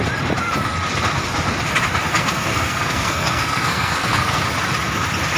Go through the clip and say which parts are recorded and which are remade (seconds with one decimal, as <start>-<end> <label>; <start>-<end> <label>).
0.0-2.1 recorded; 2.1-4.4 remade; 4.4-5.4 recorded